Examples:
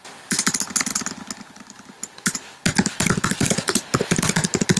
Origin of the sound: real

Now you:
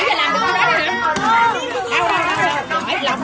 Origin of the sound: real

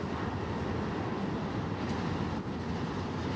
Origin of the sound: real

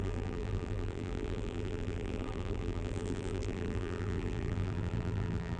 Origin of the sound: fake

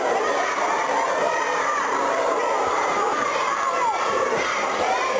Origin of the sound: fake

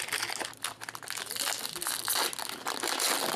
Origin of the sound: real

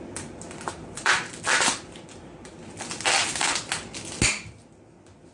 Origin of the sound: real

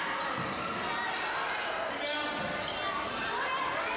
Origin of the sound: real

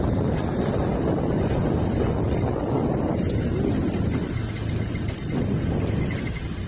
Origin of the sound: real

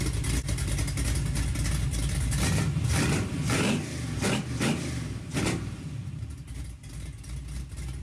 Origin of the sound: real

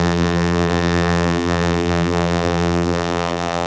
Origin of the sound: fake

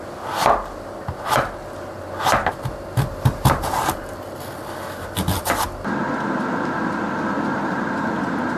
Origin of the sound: real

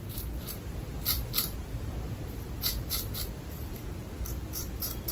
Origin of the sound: fake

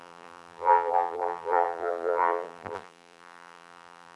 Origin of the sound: fake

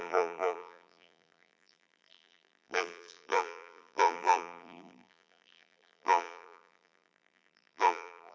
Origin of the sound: fake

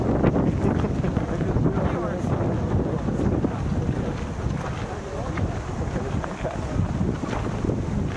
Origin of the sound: real